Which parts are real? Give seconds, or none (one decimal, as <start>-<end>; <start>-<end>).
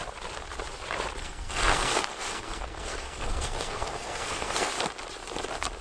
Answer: 0.0-1.2; 4.7-5.8